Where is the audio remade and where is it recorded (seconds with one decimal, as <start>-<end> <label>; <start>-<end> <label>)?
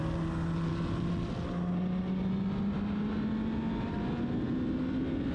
0.0-5.3 recorded